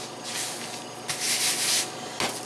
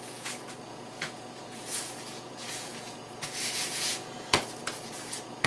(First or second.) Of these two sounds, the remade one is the second